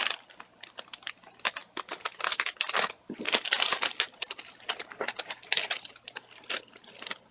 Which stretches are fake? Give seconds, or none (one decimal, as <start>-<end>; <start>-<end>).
none